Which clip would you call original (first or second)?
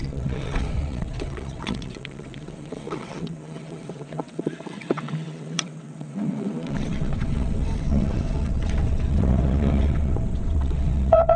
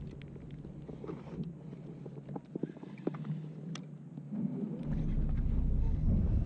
second